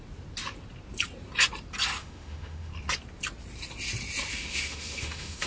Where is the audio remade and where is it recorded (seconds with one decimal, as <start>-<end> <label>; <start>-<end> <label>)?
0.0-2.0 recorded; 2.0-2.7 remade; 2.7-4.3 recorded; 4.3-5.5 remade